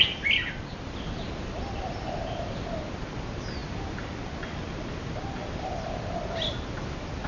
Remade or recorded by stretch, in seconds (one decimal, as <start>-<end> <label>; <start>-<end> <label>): 0.0-7.3 recorded